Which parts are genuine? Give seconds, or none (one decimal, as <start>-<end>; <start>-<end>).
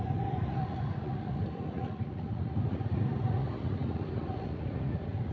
none